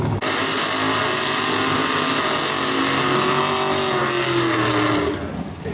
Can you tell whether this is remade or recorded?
recorded